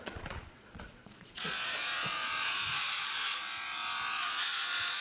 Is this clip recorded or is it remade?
remade